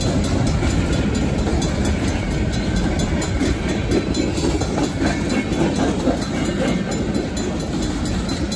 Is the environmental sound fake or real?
real